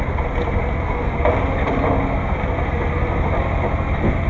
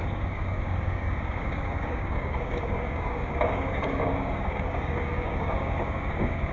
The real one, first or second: first